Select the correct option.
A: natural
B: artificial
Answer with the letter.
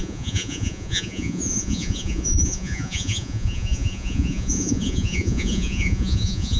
B